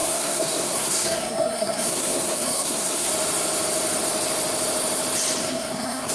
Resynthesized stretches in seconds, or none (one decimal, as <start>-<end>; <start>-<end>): 0.0-3.1; 5.4-6.1